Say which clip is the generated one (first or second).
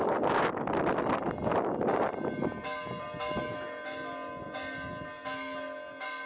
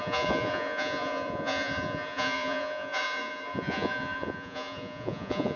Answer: second